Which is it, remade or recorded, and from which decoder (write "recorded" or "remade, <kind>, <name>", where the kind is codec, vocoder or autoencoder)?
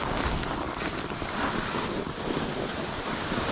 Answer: recorded